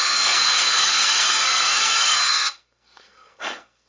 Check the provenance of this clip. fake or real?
fake